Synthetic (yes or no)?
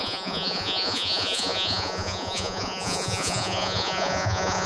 yes